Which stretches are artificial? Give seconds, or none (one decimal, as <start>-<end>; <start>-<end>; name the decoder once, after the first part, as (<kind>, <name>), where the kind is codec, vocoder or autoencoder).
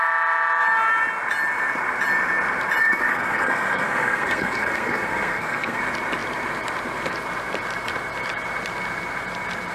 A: 2.8-5.8 (codec, SNAC)